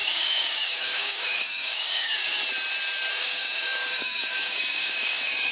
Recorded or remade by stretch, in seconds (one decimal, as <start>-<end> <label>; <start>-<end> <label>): 0.0-2.4 remade; 2.4-3.1 recorded; 3.1-5.5 remade